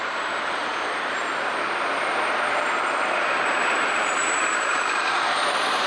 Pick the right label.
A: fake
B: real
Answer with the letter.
A